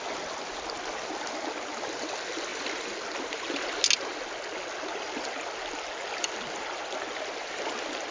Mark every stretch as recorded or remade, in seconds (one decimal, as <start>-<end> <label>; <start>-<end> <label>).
0.0-8.1 recorded